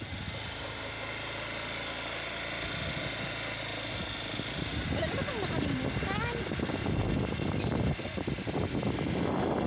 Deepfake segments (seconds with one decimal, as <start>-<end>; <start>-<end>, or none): none